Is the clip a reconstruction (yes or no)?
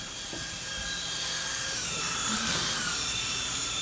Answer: yes